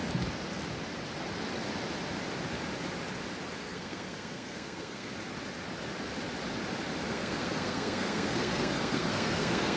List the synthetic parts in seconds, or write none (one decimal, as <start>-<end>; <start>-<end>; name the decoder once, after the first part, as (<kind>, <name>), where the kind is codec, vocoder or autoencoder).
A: 3.6-5.1 (codec, SNAC); 7.1-9.8